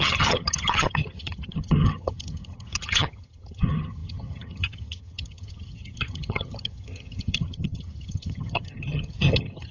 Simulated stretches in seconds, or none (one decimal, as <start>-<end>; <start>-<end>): 0.0-9.7